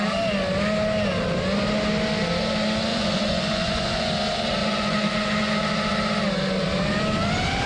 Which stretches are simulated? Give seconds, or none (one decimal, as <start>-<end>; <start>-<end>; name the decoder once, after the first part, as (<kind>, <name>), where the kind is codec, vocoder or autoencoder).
2.9-4.1 (vocoder, Vocos); 4.6-5.5

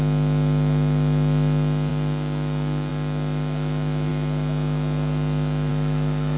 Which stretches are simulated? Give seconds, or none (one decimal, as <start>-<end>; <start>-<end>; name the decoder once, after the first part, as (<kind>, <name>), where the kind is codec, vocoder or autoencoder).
none

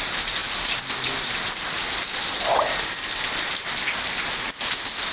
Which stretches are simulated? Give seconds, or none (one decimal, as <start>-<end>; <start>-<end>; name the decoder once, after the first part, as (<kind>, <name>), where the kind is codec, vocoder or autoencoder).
none

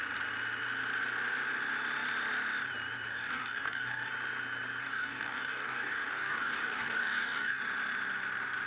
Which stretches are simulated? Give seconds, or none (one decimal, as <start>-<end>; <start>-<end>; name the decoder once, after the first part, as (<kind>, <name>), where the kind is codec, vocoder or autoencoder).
3.1-4.1 (codec, DAC); 4.8-7.6

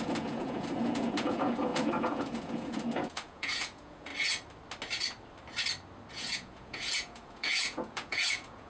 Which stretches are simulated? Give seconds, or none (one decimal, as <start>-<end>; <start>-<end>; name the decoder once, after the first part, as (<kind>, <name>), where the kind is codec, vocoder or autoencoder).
0.0-4.1 (vocoder, Vocos); 6.1-8.7

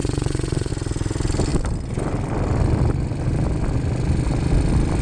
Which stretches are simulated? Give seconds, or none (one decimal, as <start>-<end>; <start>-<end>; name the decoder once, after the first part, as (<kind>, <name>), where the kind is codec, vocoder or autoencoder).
0.0-0.7 (vocoder, WaveNeXt)

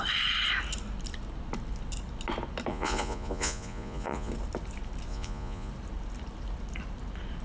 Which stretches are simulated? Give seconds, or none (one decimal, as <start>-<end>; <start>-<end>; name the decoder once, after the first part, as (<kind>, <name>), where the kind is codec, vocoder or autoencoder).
2.7-4.3 (vocoder, Vocos); 5.1-5.7